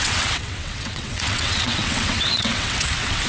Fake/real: fake